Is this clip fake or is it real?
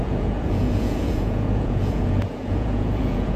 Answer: fake